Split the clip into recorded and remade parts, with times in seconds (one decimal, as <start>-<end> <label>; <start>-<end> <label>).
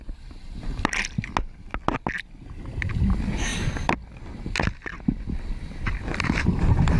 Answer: 0.0-7.0 recorded